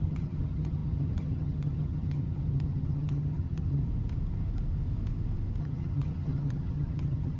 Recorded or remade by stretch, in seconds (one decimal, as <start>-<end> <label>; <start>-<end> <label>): 0.0-3.8 remade; 3.8-5.6 recorded; 5.6-7.4 remade